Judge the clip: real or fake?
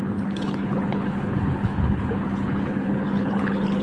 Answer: fake